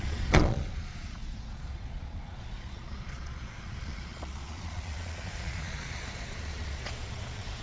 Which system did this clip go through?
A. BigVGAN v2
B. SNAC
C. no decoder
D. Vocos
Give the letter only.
D